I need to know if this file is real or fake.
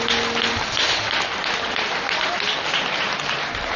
real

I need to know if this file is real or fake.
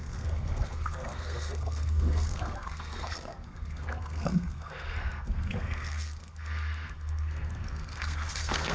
fake